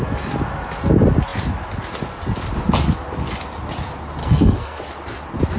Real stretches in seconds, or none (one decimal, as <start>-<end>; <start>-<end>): 0.0-4.2; 4.8-5.6